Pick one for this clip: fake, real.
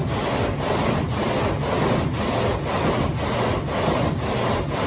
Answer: real